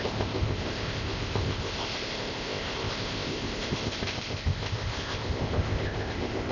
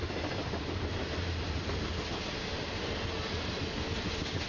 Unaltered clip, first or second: second